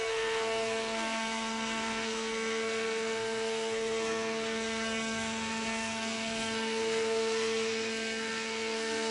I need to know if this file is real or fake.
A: fake